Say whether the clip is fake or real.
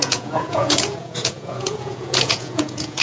fake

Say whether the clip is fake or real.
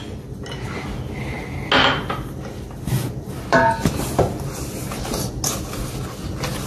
real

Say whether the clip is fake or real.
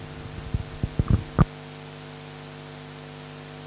real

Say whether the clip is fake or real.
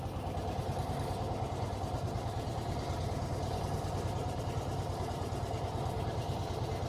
real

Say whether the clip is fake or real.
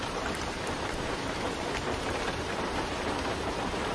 fake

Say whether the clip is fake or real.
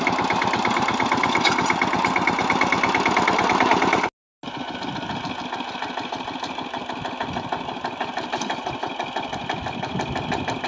real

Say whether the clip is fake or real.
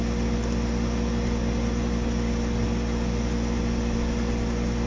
real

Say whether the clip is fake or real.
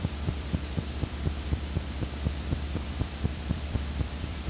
fake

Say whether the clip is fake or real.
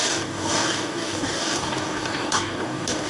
fake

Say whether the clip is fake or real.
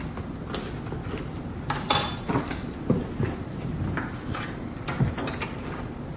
real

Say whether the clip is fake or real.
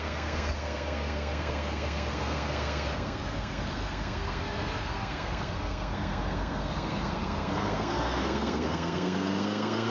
fake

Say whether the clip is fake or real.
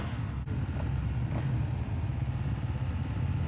real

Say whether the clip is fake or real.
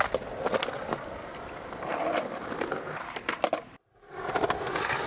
real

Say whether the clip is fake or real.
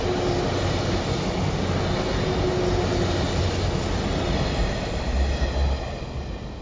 real